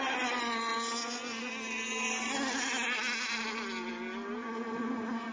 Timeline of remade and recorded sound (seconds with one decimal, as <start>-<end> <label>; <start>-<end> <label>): 0.0-5.3 recorded